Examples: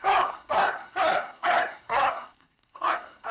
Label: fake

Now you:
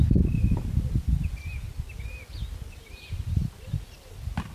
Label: real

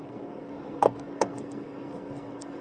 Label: fake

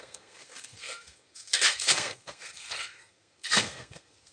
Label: fake